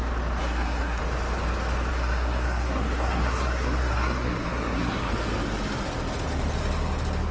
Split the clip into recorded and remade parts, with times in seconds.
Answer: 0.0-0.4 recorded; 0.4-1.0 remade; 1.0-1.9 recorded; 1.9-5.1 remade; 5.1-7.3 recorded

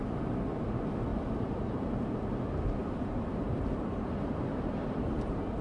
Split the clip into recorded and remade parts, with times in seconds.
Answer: 0.0-1.1 recorded; 1.1-1.8 remade; 1.8-2.8 recorded; 2.8-5.6 remade

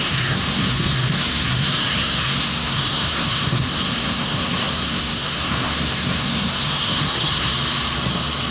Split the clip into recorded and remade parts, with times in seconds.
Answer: 0.0-7.5 remade; 7.5-8.5 recorded